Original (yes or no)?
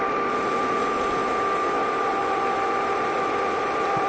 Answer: yes